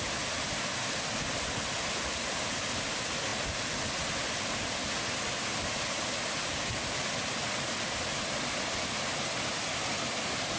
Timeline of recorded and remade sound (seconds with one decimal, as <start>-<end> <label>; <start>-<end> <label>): 0.0-10.6 recorded